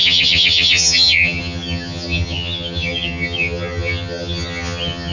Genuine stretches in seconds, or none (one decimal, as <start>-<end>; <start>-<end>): none

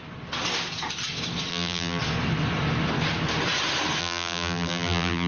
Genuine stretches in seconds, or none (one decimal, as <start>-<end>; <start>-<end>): 0.0-1.5; 2.0-4.0

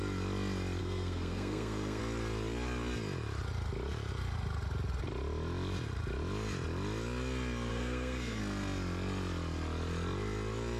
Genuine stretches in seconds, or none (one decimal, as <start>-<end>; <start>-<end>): 0.0-0.8; 2.0-7.7; 8.4-10.8